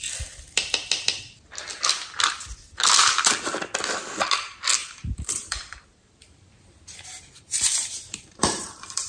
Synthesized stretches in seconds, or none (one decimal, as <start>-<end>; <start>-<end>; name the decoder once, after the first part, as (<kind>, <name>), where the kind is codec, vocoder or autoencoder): 4.8-6.4 (vocoder, BigVGAN v2); 7.7-9.1

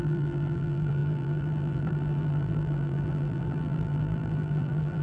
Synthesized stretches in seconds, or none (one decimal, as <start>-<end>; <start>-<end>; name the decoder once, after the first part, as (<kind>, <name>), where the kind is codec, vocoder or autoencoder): 0.0-5.0 (vocoder, BigVGAN v2)

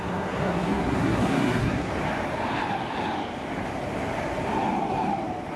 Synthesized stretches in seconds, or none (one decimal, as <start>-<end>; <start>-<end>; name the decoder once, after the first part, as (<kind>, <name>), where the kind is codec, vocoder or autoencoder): 0.0-1.9 (codec, SNAC)

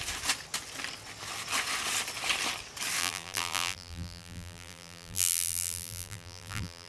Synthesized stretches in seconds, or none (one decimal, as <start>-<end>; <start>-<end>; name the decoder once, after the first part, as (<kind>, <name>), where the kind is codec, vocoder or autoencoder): 3.0-6.9 (vocoder, BigVGAN v2)

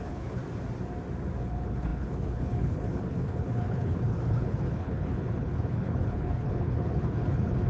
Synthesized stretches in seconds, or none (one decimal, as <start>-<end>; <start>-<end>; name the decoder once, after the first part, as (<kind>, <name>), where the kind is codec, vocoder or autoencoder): 0.0-0.4 (codec, HILCodec); 1.4-7.7

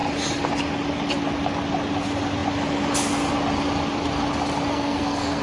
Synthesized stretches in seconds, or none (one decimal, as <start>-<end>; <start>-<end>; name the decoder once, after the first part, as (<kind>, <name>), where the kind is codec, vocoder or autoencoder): 4.7-5.4 (codec, SNAC)

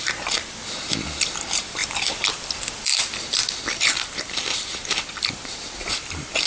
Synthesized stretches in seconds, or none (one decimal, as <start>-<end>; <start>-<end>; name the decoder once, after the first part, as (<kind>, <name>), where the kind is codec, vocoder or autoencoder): 1.8-2.9 (vocoder, BigVGAN v2); 3.4-6.5

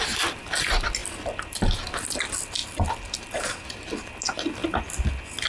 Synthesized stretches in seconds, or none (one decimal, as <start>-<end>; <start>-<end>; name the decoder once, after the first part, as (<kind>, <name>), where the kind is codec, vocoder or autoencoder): none